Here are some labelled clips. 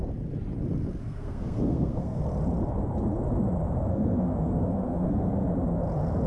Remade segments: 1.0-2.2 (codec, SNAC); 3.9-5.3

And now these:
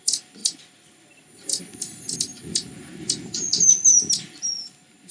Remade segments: none

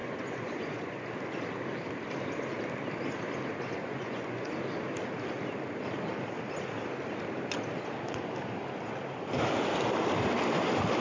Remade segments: 0.0-1.1 (vocoder, Vocos); 3.8-4.5

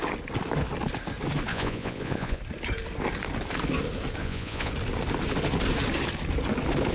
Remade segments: 1.5-2.4 (vocoder, Vocos); 4.2-4.7

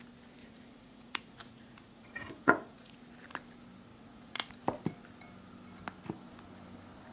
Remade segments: 0.4-3.0 (vocoder, Vocos); 3.9-4.5

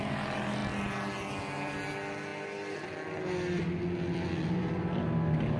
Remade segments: none

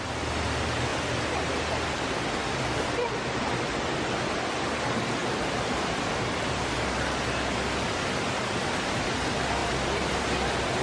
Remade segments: 5.2-7.4 (vocoder, BigVGAN v2); 9.6-10.2